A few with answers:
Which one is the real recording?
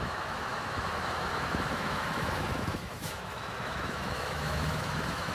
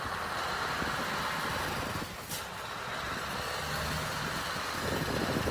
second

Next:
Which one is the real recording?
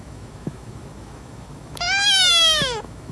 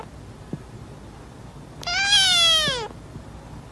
second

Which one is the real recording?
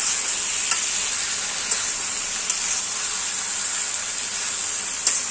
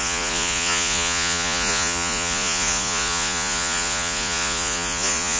first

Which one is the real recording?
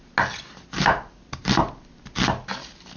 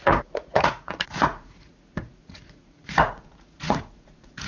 first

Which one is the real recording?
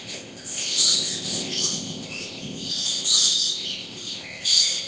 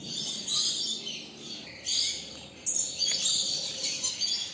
second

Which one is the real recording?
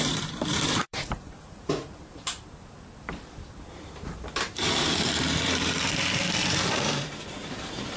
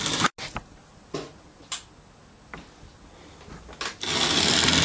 second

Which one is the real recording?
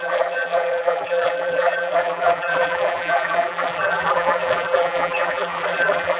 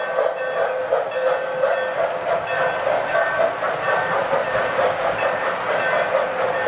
second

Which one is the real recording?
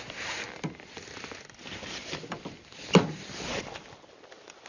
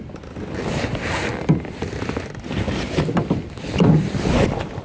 second